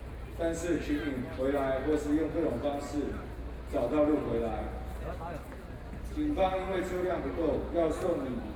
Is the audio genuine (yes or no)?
yes